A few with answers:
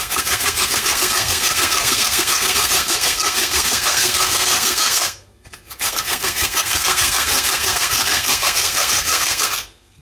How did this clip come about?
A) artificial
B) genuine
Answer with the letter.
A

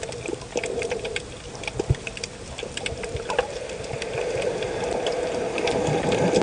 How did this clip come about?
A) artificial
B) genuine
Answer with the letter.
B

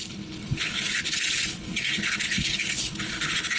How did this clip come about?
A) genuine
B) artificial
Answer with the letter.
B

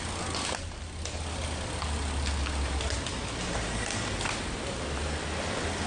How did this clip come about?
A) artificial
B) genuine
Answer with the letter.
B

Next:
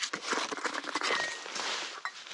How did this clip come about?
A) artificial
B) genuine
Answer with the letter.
B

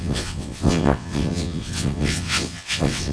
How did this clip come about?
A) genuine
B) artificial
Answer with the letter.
B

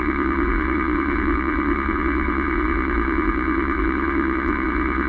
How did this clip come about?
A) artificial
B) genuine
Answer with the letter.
A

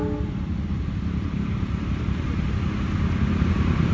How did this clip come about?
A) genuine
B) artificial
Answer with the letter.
A